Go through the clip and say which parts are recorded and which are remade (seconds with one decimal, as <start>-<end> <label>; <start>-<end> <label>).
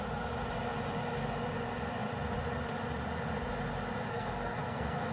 0.0-4.1 recorded; 4.1-5.1 remade